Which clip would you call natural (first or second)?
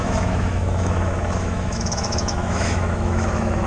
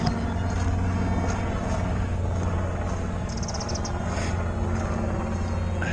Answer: second